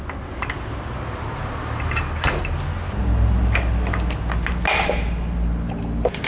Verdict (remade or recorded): recorded